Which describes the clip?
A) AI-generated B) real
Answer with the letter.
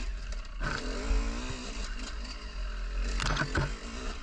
B